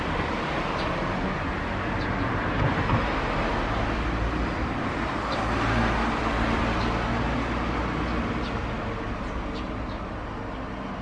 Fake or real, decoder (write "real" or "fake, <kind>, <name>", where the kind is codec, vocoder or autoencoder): real